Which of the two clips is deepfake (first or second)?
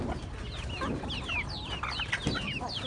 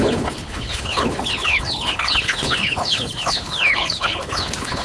second